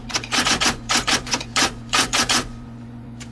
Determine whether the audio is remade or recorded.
remade